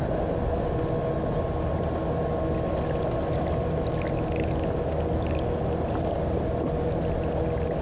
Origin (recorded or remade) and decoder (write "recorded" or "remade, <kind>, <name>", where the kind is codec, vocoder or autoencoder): recorded